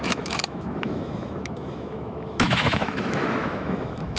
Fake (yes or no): yes